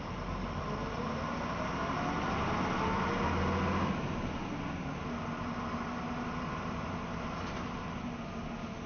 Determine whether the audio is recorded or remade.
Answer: recorded